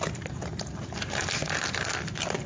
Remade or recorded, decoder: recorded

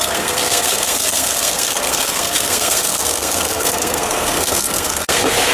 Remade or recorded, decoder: remade, codec, SNAC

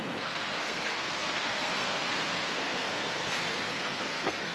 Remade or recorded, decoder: remade, codec, SNAC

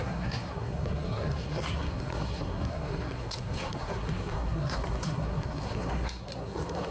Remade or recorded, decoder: remade, codec, SNAC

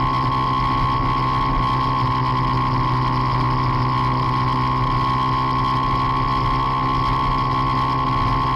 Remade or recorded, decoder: recorded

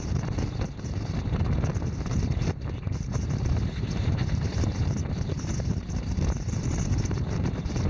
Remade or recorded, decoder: remade, vocoder, BigVGAN v2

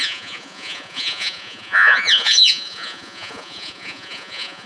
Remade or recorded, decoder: remade, vocoder, Vocos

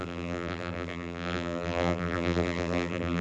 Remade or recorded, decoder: remade, vocoder, BigVGAN v2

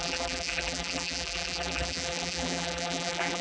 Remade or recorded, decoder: remade, vocoder, BigVGAN v2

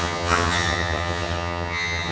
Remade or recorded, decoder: remade, vocoder, HiFi-GAN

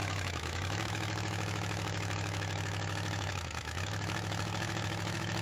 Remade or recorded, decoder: remade, autoencoder, DAC-VAE